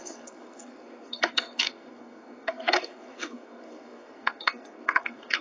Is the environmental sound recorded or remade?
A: remade